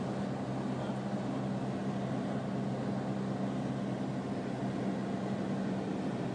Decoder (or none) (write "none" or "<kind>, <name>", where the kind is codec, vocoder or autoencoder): none